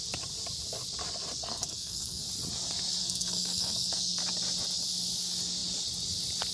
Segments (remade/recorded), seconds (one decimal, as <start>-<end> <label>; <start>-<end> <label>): 0.0-1.4 recorded; 1.4-2.3 remade; 2.3-3.0 recorded; 3.0-4.2 remade; 4.2-6.5 recorded

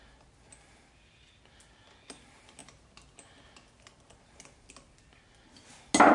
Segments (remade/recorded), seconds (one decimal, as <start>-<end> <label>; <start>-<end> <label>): 0.0-6.1 recorded

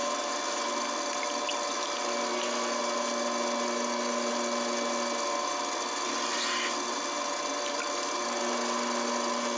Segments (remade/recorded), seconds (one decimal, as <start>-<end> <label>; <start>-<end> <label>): 0.0-9.6 recorded

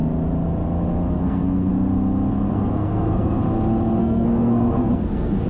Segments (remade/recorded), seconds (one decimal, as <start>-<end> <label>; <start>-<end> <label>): 0.0-1.1 recorded; 1.1-1.7 remade; 1.7-2.5 recorded; 2.5-3.4 remade; 3.4-4.0 recorded; 4.0-5.5 remade